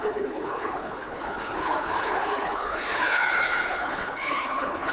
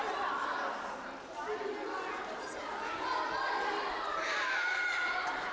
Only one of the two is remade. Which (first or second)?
first